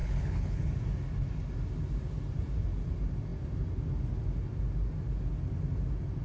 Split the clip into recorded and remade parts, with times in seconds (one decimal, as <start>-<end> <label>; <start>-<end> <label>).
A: 0.0-0.6 remade; 0.6-6.2 recorded